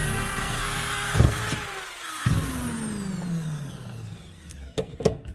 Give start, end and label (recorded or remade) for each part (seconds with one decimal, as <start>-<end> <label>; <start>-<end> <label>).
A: 0.0-1.4 remade; 1.4-2.0 recorded; 2.0-2.4 remade; 2.4-3.3 recorded; 3.3-5.3 remade

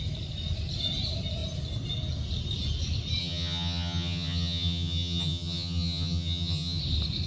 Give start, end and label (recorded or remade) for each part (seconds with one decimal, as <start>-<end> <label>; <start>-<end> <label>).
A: 0.0-3.2 recorded; 3.2-6.8 remade; 6.8-7.3 recorded

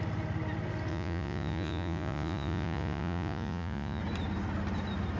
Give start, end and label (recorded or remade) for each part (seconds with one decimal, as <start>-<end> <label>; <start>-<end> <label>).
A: 0.0-0.9 recorded; 0.9-4.0 remade; 4.0-5.2 recorded